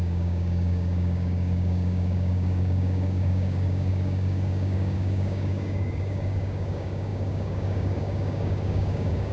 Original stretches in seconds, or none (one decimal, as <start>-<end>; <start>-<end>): none